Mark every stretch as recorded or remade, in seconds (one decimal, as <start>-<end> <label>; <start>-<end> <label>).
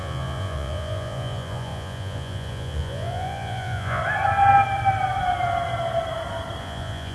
0.0-4.0 remade; 4.0-6.6 recorded; 6.6-7.1 remade